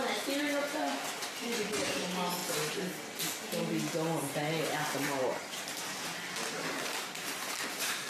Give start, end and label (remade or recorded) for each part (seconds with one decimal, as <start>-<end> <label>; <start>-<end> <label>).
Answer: 0.0-8.1 recorded